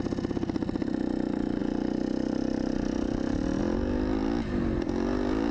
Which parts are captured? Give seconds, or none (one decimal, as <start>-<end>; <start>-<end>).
0.0-5.5

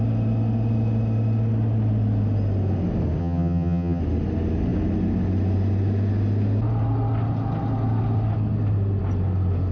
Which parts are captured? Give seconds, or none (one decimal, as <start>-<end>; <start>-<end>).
0.0-3.2; 4.0-9.7

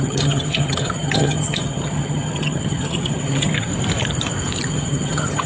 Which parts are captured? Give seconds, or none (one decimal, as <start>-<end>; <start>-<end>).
3.7-4.7